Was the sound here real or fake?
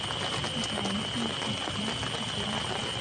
real